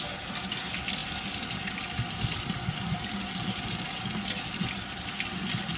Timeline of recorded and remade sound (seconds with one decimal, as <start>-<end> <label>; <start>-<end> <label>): 0.0-5.8 recorded